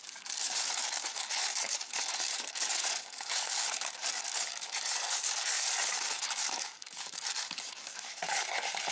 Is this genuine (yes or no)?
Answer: no